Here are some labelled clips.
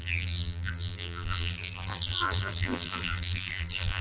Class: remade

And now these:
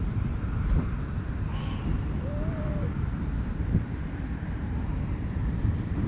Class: remade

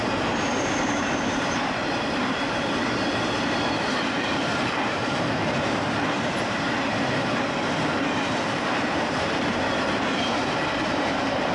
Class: remade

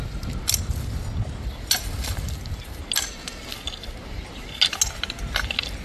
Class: recorded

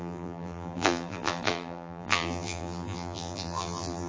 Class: remade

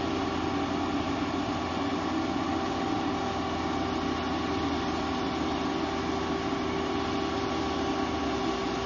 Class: recorded